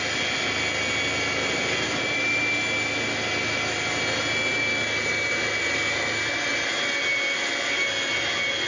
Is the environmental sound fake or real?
real